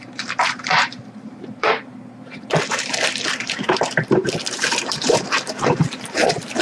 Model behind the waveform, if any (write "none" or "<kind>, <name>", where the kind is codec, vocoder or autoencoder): vocoder, BigVGAN v2